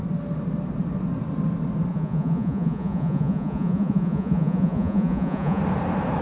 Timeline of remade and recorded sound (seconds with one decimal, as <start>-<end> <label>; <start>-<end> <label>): 0.0-1.9 recorded; 1.9-5.6 remade; 5.6-6.2 recorded